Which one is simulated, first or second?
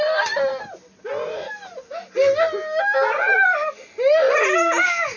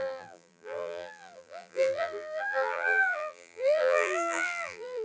second